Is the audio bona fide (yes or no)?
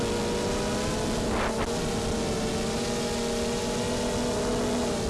yes